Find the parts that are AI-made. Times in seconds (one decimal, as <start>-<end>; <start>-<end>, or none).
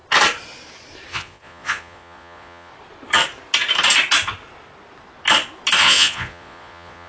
1.1-2.7; 5.8-7.1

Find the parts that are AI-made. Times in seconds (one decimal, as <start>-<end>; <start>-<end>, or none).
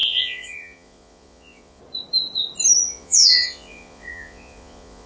0.0-1.8; 2.8-5.1